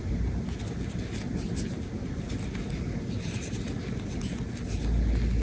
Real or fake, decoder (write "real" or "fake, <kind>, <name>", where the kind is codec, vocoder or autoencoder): real